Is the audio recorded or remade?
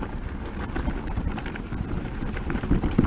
recorded